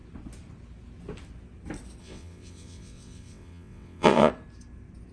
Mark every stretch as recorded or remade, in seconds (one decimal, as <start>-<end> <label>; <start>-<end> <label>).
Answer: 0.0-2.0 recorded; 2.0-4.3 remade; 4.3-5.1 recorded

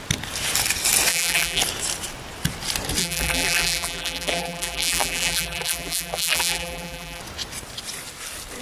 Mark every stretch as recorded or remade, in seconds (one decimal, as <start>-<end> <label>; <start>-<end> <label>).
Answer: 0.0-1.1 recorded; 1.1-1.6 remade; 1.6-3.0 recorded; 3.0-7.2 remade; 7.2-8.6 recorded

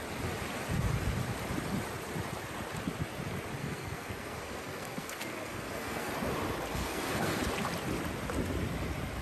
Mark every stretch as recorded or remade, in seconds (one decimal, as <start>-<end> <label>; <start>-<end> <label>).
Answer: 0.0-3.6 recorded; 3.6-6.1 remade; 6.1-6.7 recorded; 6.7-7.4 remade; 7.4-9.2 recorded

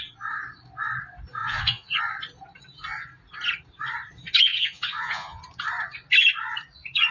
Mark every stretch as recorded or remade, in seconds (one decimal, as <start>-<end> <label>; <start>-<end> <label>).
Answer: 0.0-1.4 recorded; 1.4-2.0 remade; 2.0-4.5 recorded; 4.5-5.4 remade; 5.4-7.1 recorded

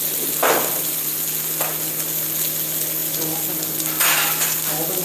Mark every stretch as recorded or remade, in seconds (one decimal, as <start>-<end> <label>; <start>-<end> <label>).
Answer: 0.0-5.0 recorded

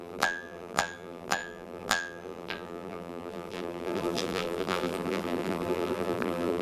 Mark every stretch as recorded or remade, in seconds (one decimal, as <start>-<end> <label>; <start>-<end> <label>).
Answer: 0.0-6.6 remade